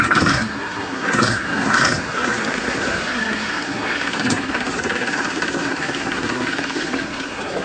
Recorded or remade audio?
remade